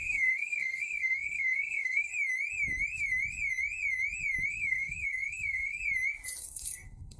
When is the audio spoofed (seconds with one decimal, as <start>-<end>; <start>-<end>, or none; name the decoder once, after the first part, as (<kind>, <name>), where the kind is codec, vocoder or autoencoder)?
0.0-2.1 (codec, SNAC); 4.5-5.8; 6.4-7.2